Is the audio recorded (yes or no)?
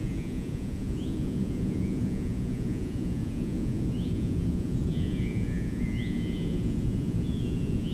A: no